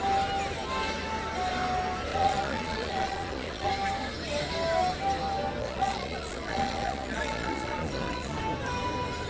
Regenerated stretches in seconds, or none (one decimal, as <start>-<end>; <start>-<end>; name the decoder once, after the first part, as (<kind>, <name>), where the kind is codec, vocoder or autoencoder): 2.1-3.7 (vocoder, Vocos); 5.6-8.4